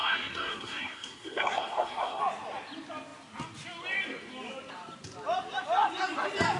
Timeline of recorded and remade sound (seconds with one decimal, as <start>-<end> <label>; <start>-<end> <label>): 0.0-2.2 remade; 2.2-6.6 recorded